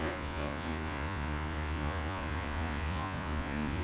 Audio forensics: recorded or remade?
remade